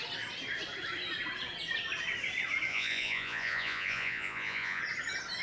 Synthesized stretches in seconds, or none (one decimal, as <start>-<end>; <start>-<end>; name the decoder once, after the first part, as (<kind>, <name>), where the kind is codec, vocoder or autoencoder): 2.7-4.8 (vocoder, Vocos)